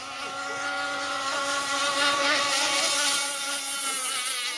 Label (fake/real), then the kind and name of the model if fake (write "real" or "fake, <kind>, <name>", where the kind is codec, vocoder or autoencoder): real